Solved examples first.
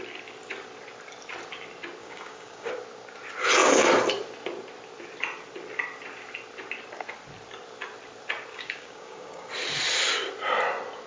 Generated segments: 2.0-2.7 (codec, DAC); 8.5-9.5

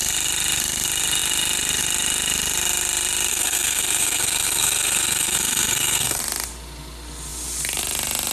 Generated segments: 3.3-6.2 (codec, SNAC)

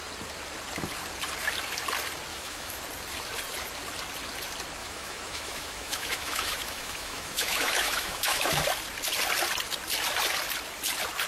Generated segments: 2.3-2.8 (autoencoder, DAC-VAE); 4.8-8.6

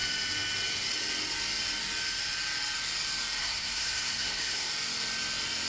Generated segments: 3.4-4.7 (codec, SNAC)

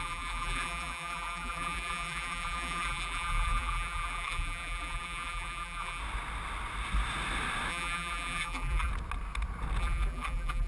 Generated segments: 0.0-6.0 (vocoder, BigVGAN v2); 7.7-8.9; 9.8-10.7

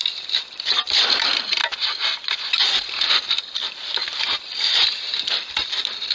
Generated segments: 0.0-1.6 (vocoder, BigVGAN v2); 3.1-3.9; 5.3-6.1